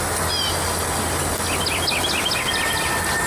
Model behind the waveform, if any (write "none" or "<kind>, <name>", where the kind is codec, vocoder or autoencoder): none